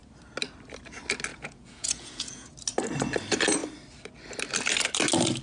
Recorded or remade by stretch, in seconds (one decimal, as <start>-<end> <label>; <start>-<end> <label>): 0.0-1.3 recorded; 1.3-2.5 remade; 2.5-5.4 recorded